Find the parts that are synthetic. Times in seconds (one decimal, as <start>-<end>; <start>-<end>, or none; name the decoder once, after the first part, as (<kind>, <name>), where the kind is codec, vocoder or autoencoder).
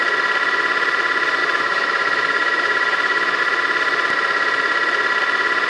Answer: 1.4-3.4 (autoencoder, DAC-VAE)